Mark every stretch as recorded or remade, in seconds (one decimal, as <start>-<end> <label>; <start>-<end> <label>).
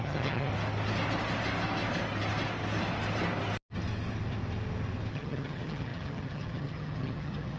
0.0-0.5 remade; 0.5-5.1 recorded; 5.1-7.6 remade